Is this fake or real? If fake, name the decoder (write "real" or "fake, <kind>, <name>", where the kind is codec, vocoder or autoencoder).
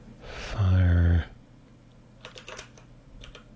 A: real